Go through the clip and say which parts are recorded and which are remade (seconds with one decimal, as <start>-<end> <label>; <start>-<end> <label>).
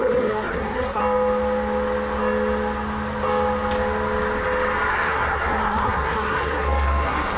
0.0-1.0 remade; 1.0-4.9 recorded; 4.9-7.4 remade